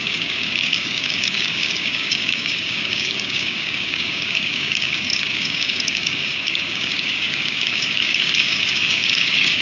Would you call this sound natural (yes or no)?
no